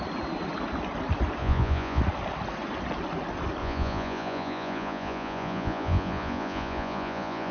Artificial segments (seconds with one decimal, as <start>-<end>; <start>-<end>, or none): 1.4-2.0; 3.6-7.5